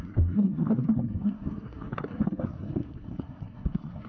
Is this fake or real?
fake